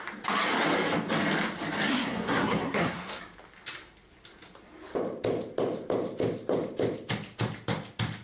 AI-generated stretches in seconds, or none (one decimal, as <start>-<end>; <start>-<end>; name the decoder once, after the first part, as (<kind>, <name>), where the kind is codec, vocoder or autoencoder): 1.9-3.2 (codec, SNAC)

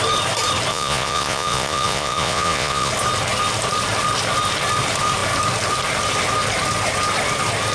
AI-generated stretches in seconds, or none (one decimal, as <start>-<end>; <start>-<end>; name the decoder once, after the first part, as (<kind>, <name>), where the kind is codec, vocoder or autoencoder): 0.7-2.9 (vocoder, Vocos)

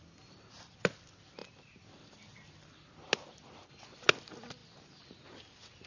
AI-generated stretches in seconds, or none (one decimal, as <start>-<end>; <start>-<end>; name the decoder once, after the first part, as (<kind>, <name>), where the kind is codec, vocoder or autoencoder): none

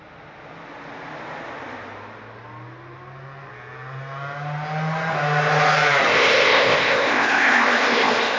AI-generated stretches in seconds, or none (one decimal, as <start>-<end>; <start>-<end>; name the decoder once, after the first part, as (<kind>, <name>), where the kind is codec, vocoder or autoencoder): 6.1-8.4 (codec, ZipCodec)

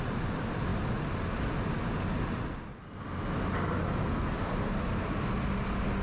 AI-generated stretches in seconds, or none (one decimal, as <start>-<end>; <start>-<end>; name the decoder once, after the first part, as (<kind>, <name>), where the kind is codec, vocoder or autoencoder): none